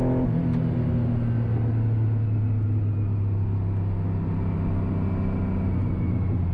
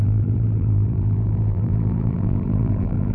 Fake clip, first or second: second